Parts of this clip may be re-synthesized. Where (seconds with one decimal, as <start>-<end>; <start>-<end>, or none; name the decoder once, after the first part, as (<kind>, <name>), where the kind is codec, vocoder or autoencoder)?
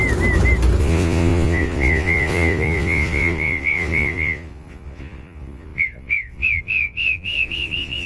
0.8-8.1 (vocoder, Vocos)